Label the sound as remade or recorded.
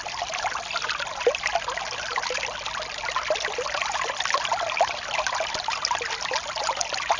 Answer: recorded